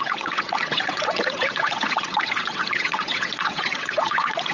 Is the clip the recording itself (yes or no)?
no